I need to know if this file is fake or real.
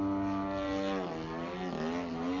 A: real